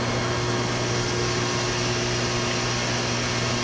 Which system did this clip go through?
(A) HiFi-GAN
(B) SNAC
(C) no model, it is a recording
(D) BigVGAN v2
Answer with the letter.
C